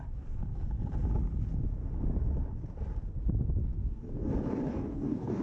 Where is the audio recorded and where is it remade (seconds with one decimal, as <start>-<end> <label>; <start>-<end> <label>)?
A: 0.0-3.8 recorded; 3.8-4.3 remade; 4.3-4.7 recorded; 4.7-5.4 remade